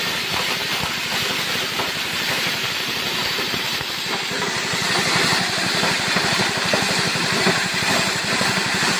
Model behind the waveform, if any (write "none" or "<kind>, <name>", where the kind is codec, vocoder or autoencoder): vocoder, BigVGAN v2